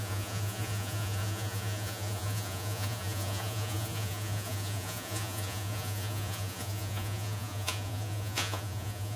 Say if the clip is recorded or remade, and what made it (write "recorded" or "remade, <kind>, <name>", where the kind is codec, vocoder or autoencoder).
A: remade, vocoder, Vocos